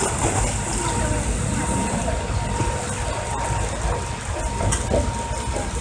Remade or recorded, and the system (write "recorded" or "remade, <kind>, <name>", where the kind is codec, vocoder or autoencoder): recorded